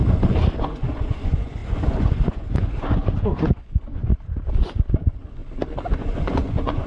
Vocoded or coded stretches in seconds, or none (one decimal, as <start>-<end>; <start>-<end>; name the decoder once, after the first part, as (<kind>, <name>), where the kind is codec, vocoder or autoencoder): 0.6-4.1 (vocoder, Vocos); 4.9-5.4; 5.9-6.9